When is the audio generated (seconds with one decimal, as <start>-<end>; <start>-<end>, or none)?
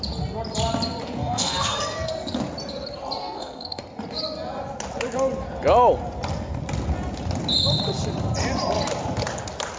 1.2-2.1; 3.2-3.8